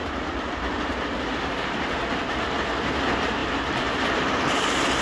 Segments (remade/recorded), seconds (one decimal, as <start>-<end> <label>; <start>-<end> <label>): 0.0-3.4 recorded; 3.4-4.3 remade; 4.3-5.0 recorded